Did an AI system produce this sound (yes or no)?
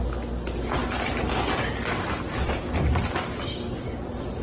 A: no